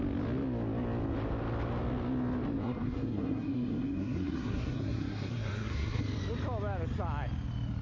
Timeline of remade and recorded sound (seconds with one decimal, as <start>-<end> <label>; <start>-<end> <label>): 0.0-2.6 recorded; 2.6-6.0 remade; 6.0-7.8 recorded